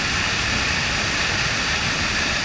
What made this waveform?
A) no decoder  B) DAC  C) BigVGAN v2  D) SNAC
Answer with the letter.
A